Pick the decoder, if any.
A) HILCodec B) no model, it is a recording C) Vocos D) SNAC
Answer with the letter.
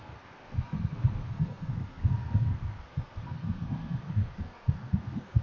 D